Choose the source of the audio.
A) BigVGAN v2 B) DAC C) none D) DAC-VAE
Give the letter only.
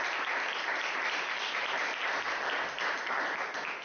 C